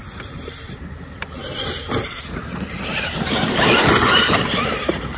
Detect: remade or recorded remade